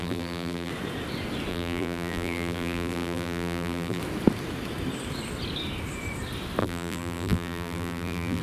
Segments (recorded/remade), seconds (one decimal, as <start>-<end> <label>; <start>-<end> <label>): 0.0-0.7 remade; 0.7-1.5 recorded; 1.5-4.0 remade; 4.0-6.6 recorded; 6.6-8.4 remade